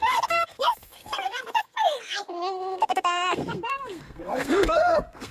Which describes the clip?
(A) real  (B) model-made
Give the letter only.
B